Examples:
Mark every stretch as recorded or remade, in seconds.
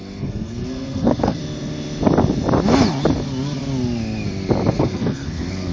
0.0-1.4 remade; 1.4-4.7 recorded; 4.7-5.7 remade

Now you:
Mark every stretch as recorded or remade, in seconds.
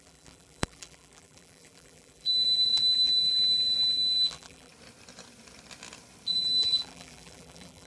0.0-4.7 remade; 4.7-6.3 recorded; 6.3-7.9 remade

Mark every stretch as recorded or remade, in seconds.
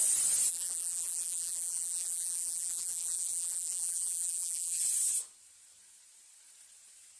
0.0-0.5 recorded; 0.5-4.8 remade; 4.8-7.2 recorded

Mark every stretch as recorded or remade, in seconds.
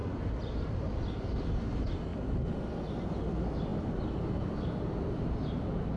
0.0-1.0 remade; 1.0-3.7 recorded; 3.7-5.2 remade; 5.2-6.0 recorded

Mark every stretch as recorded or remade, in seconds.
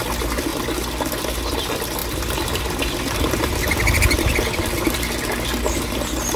0.0-0.5 remade; 0.5-1.0 recorded; 1.0-6.4 remade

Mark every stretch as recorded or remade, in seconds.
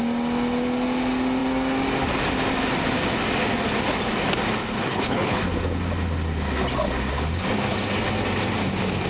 0.0-4.8 recorded; 4.8-5.4 remade; 5.4-9.1 recorded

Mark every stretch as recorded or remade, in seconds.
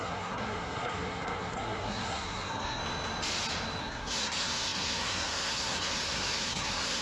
0.0-2.8 remade; 2.8-3.8 recorded; 3.8-7.0 remade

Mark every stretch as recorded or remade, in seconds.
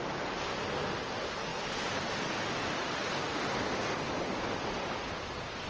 0.0-5.7 recorded